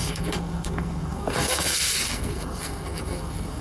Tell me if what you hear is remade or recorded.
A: remade